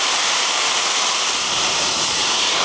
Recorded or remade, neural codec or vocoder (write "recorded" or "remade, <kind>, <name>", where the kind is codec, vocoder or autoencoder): remade, vocoder, BigVGAN v2